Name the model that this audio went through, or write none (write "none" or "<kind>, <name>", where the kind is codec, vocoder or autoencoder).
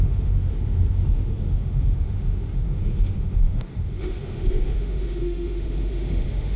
autoencoder, DAC-VAE